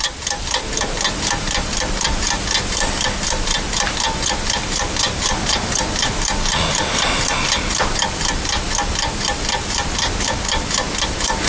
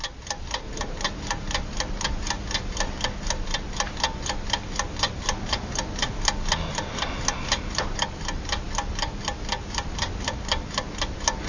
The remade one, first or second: first